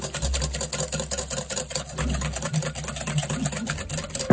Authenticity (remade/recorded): recorded